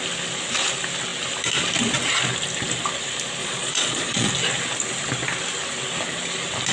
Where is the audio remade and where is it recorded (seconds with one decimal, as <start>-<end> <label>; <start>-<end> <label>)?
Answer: 0.0-3.4 recorded; 3.4-4.3 remade; 4.3-6.7 recorded